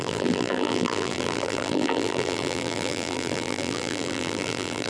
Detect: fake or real fake